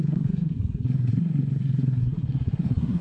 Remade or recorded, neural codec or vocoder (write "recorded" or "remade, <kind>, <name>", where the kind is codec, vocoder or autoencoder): remade, codec, SNAC